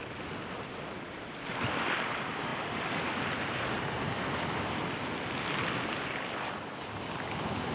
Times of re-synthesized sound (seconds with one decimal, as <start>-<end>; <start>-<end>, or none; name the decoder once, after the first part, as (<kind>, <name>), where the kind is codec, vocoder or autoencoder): none